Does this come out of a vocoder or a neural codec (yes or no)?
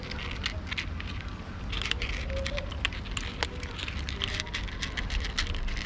no